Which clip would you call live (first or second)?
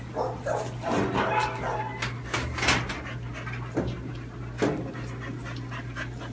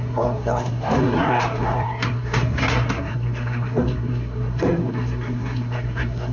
first